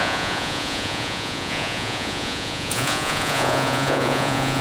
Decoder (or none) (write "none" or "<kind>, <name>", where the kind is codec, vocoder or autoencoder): vocoder, Vocos